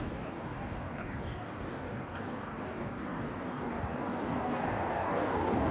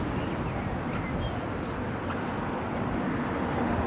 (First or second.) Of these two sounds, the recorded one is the second